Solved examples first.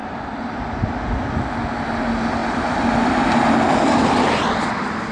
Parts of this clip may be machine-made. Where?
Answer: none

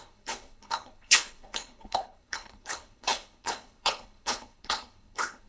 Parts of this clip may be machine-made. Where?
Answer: 0.0-5.5 (codec, HILCodec)

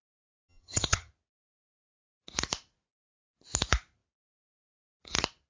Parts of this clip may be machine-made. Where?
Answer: 0.5-1.1 (vocoder, HiFi-GAN)

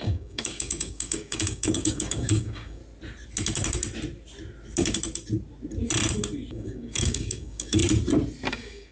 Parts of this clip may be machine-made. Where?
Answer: 0.0-2.8 (codec, DAC); 6.5-7.8; 8.5-8.9

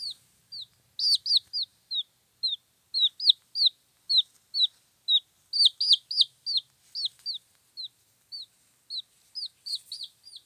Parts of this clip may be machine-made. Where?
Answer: none